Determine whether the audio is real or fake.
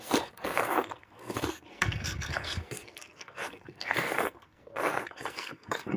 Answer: fake